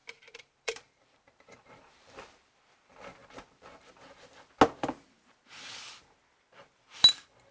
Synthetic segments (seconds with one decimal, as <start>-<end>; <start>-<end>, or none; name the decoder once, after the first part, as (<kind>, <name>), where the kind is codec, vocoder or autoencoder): 0.0-2.2 (vocoder, BigVGAN v2)